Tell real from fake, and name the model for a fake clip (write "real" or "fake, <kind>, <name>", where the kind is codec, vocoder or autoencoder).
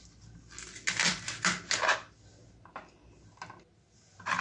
real